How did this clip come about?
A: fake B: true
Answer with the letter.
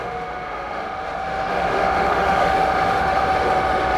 A